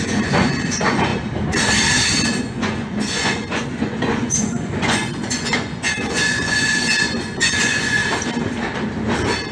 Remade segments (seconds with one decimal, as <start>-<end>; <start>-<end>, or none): 0.0-1.1; 2.4-8.0